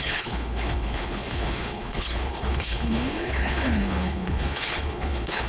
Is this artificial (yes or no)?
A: yes